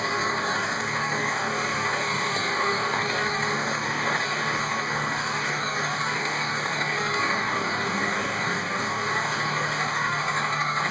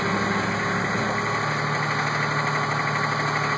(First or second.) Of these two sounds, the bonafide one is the second